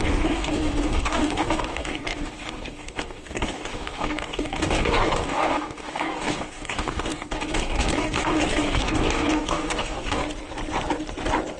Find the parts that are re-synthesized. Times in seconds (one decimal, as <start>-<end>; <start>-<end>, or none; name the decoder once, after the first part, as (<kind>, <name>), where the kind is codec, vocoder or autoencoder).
0.0-10.2 (codec, DAC)